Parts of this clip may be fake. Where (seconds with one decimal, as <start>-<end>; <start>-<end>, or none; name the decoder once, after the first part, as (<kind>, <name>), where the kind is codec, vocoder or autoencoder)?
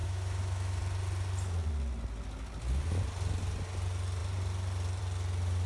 0.0-0.8 (autoencoder, DAC-VAE)